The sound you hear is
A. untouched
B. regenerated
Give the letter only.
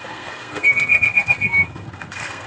B